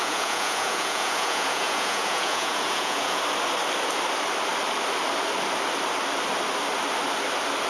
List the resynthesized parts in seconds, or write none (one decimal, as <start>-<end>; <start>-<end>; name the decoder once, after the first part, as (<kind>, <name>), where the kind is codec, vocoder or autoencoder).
0.0-3.2 (vocoder, Vocos)

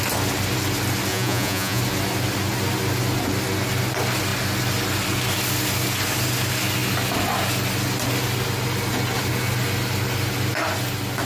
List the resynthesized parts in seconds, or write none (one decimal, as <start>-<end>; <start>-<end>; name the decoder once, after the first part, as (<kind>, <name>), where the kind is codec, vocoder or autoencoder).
1.1-1.8 (vocoder, Vocos)

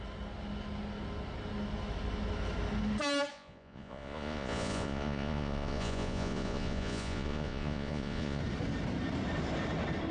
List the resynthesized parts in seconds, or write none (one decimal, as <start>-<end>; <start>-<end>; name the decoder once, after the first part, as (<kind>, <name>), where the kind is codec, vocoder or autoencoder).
3.3-8.4 (vocoder, Vocos)

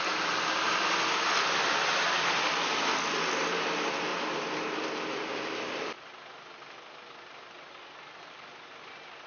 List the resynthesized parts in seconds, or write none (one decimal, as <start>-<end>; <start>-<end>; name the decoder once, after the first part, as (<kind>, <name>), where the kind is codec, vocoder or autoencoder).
none

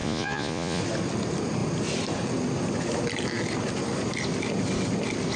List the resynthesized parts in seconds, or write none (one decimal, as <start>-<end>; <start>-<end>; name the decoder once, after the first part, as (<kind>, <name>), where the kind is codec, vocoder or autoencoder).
0.0-0.8 (vocoder, Vocos)